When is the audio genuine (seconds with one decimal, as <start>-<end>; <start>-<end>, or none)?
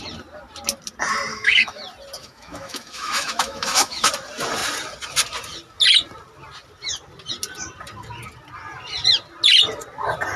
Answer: 0.0-1.3; 1.8-2.2; 4.1-10.4